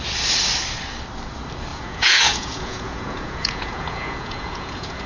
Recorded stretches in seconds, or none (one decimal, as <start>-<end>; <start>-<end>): 0.0-1.7